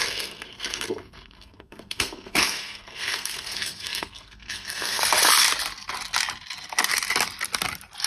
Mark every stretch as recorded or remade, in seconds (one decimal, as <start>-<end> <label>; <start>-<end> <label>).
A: 0.0-5.0 remade; 5.0-8.1 recorded